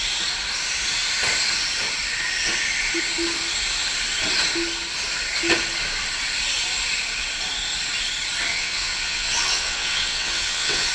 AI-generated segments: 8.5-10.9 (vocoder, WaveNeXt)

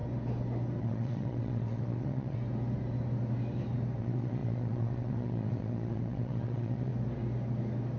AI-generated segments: 0.8-2.4 (vocoder, WaveNeXt); 4.0-6.9

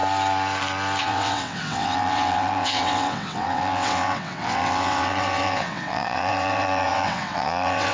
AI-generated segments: 1.0-7.9 (vocoder, WaveNeXt)